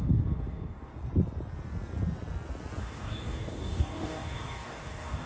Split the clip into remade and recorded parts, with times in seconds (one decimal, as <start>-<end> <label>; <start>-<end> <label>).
0.0-0.9 remade; 0.9-2.8 recorded; 2.8-5.3 remade